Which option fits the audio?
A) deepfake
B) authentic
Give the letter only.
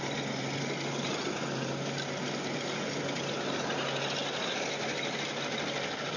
B